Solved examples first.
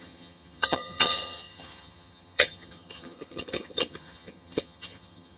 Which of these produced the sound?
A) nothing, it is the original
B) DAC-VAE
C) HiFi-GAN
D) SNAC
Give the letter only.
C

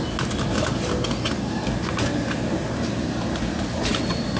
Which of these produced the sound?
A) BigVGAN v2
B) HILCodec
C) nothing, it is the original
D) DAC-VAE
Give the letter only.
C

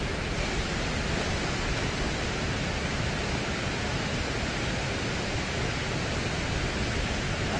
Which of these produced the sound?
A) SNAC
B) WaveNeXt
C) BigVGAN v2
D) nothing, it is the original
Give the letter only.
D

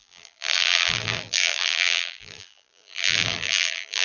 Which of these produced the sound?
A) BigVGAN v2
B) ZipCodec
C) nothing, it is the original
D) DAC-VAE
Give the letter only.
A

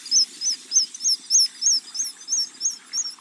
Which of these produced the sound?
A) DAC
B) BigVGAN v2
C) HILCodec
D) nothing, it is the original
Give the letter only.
D